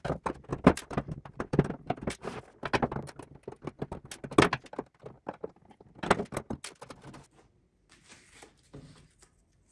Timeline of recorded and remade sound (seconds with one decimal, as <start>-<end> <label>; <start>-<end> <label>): 0.0-0.5 recorded; 0.5-2.4 remade; 2.4-9.7 recorded